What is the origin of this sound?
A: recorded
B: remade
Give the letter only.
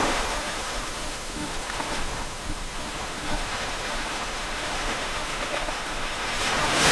B